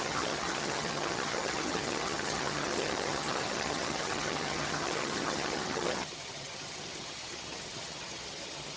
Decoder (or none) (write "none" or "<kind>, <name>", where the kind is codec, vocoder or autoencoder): vocoder, HiFi-GAN